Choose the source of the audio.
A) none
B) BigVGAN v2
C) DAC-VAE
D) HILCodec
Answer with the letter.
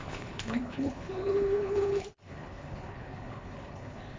D